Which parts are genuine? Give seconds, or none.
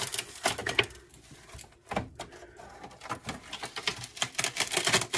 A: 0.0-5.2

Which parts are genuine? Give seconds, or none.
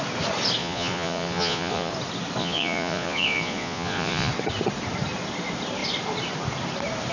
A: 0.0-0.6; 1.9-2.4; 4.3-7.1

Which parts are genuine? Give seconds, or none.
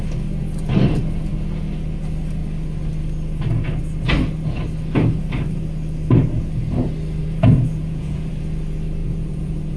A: 0.0-7.2; 8.3-9.0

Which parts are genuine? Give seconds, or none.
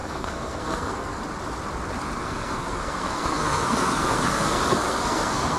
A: 1.2-2.2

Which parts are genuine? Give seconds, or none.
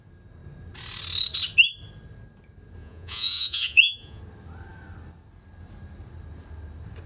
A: 0.0-2.8; 4.2-7.1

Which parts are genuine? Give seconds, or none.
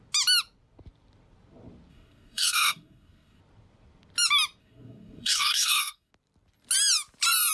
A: 0.0-1.9; 3.4-4.6; 6.1-7.5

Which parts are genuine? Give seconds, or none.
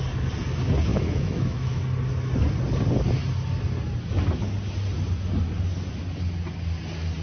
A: 0.0-0.9; 1.8-7.2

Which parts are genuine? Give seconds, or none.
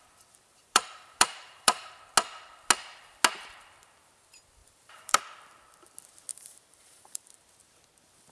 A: 0.0-0.5; 1.9-4.6; 5.2-6.3; 7.3-8.3